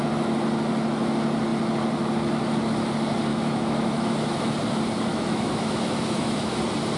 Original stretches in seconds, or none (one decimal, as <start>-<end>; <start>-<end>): 0.0-3.3; 4.5-5.1; 6.5-7.0